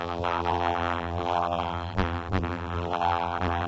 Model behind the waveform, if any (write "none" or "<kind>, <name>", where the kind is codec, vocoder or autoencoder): vocoder, BigVGAN v2